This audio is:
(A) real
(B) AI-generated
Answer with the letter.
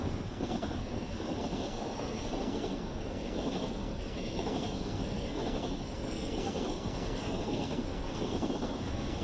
B